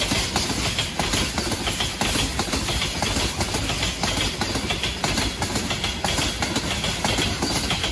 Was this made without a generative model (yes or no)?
yes